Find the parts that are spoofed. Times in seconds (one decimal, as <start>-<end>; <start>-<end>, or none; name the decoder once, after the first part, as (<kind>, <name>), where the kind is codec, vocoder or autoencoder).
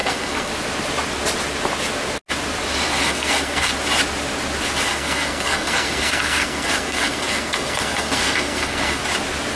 0.0-0.5 (codec, SNAC); 3.0-3.7; 4.9-9.0